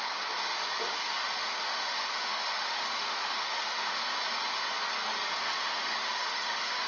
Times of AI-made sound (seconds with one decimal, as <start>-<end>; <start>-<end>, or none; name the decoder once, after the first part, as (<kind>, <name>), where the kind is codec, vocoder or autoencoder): 1.2-3.9 (autoencoder, DAC-VAE); 5.4-6.9